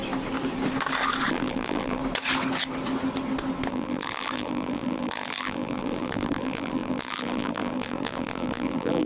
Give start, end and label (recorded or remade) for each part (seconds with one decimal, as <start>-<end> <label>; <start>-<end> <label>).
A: 0.0-1.3 recorded; 1.3-2.0 remade; 2.0-3.7 recorded; 3.7-9.1 remade